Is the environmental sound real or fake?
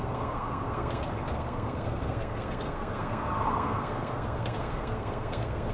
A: fake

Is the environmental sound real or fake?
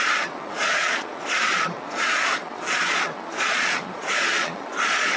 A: fake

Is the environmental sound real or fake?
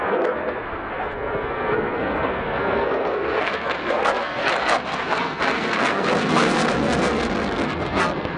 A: fake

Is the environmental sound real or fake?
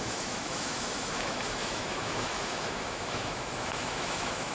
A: fake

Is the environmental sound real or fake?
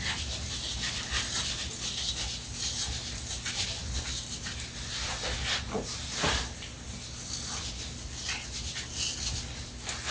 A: real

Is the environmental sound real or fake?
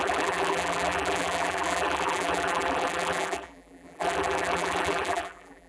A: fake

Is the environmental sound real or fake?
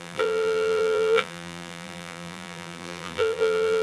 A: fake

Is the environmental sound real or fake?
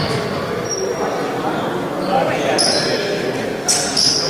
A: real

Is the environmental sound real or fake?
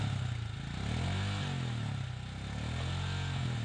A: real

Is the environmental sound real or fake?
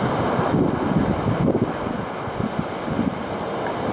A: real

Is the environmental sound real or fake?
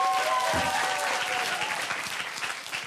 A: real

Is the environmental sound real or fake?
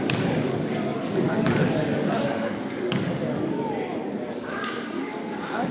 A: fake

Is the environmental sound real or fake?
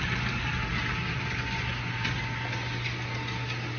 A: real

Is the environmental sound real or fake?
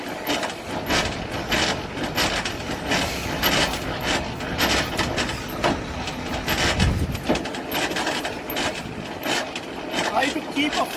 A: real